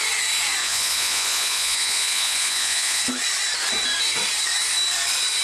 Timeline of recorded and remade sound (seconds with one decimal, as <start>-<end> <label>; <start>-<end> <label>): 0.0-0.6 recorded; 0.6-3.0 remade; 3.0-5.4 recorded